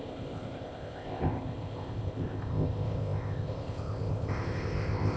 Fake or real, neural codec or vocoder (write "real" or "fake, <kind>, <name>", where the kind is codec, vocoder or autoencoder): fake, codec, ZipCodec